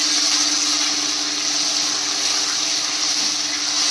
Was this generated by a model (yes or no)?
no